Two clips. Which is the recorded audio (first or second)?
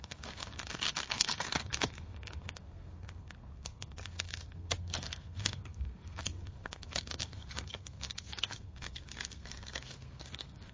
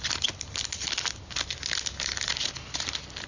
second